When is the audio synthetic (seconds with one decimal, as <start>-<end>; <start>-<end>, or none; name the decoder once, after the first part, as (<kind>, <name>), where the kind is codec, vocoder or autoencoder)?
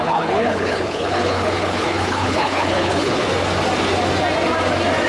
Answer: 0.0-3.2 (codec, HILCodec)